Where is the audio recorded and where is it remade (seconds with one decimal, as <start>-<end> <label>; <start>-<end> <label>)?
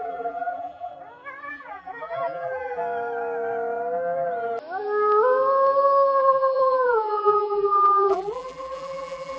0.0-0.9 remade; 0.9-1.5 recorded; 1.5-2.8 remade; 2.8-6.2 recorded; 6.2-9.4 remade